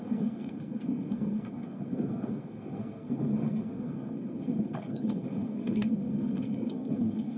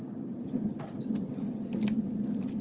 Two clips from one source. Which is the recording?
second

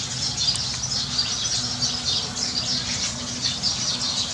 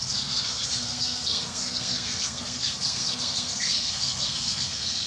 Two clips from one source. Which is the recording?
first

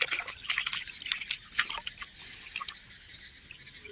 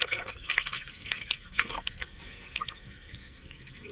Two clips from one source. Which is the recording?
first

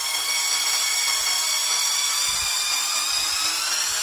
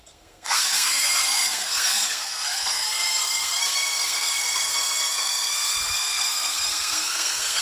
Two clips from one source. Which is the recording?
first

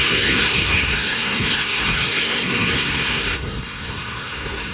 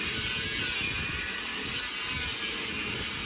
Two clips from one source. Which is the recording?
second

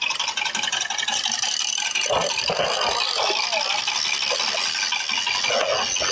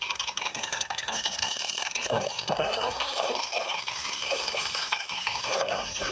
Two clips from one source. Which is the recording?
first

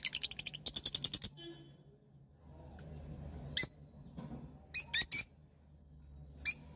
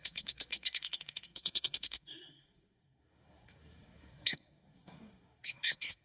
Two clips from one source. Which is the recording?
first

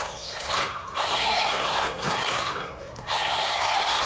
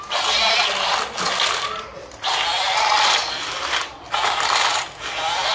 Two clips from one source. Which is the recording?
second